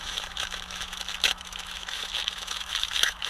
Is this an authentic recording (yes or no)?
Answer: no